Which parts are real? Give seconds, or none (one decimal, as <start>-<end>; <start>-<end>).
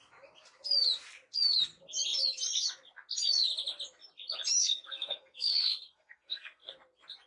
0.0-4.6; 6.7-7.3